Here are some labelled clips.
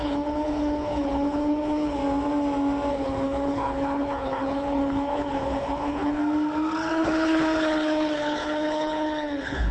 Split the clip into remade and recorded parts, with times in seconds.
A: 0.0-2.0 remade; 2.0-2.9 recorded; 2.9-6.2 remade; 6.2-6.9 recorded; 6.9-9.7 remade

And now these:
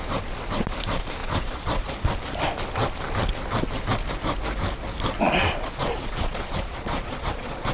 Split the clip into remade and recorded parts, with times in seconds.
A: 0.0-1.2 recorded; 1.2-2.1 remade; 2.1-5.4 recorded; 5.4-7.7 remade

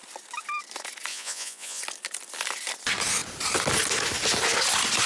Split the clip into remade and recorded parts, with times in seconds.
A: 0.0-1.1 recorded; 1.1-1.8 remade; 1.8-5.1 recorded

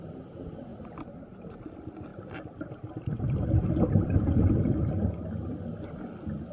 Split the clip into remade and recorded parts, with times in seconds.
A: 0.0-0.7 recorded; 0.7-1.6 remade; 1.6-6.5 recorded

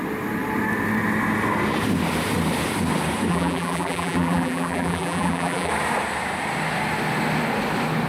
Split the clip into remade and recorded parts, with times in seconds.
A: 0.0-3.3 recorded; 3.3-5.7 remade; 5.7-8.1 recorded